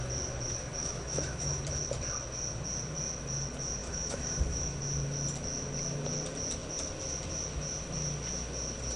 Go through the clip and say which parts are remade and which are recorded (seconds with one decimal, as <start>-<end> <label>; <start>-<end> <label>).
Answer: 0.0-0.8 recorded; 0.8-1.6 remade; 1.6-3.8 recorded; 3.8-4.8 remade; 4.8-9.0 recorded